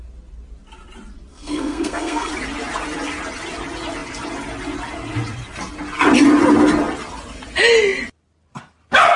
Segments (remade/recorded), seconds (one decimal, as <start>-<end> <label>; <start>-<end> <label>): 0.0-1.3 recorded; 1.3-2.3 remade; 2.3-9.2 recorded